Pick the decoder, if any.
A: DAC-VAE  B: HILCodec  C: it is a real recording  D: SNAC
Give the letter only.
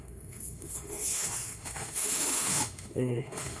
A